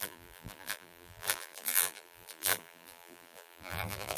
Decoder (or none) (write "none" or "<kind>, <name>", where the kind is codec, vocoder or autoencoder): vocoder, BigVGAN v2